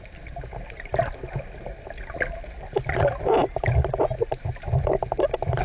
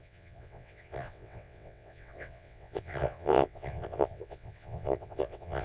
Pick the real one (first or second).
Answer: first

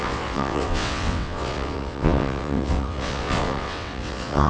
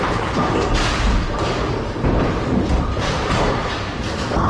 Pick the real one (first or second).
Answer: second